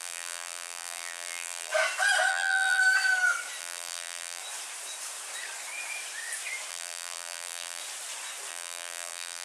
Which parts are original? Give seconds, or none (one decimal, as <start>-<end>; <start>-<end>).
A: 1.7-2.3; 2.8-3.6; 4.4-6.7; 7.8-8.5